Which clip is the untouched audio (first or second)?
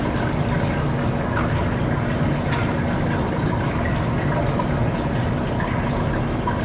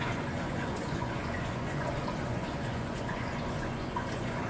first